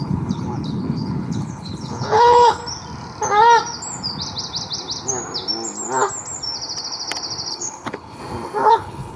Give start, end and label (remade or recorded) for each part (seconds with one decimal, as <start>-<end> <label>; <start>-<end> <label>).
0.0-2.6 remade; 2.6-7.5 recorded; 7.5-8.2 remade; 8.2-8.7 recorded; 8.7-9.2 remade